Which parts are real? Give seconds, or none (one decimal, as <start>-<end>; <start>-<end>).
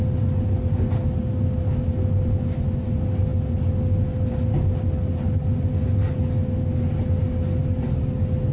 0.0-8.5